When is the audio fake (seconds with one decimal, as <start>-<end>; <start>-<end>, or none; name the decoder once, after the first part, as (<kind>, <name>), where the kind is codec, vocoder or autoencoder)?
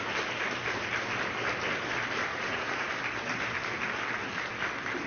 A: 2.3-2.9 (vocoder, Vocos)